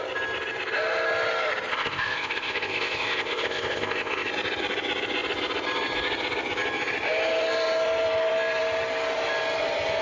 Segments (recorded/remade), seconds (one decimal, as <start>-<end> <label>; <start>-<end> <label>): 0.0-1.7 recorded; 1.7-4.3 remade; 4.3-10.0 recorded